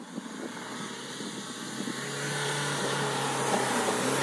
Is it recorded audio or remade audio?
recorded